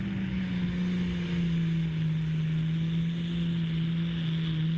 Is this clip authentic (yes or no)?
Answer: yes